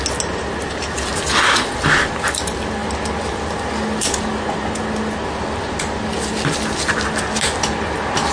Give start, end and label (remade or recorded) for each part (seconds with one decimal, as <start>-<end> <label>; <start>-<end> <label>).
0.0-8.3 recorded